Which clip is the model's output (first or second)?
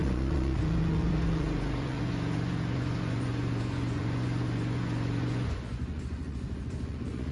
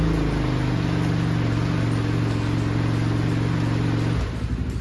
first